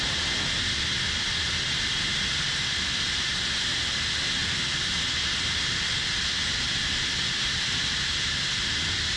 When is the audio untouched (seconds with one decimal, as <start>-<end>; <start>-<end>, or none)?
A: 0.0-9.2